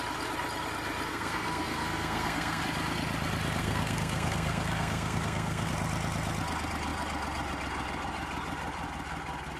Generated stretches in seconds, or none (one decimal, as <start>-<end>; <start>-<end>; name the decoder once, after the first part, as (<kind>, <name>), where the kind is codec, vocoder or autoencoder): 1.1-2.6 (codec, SNAC); 3.6-5.7